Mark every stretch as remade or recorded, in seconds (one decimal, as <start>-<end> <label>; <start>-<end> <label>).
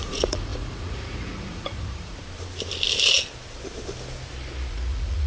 0.0-2.2 remade; 2.2-4.7 recorded; 4.7-5.3 remade